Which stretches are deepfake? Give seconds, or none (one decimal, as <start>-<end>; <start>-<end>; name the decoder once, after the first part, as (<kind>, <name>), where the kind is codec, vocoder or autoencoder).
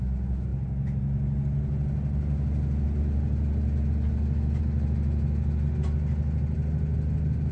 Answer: none